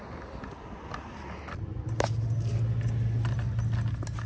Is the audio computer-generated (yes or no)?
no